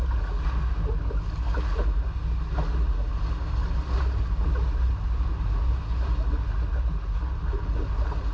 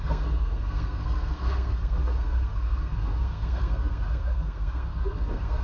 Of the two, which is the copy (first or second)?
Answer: second